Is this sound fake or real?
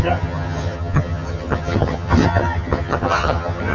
fake